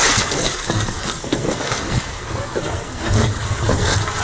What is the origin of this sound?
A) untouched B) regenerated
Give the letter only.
B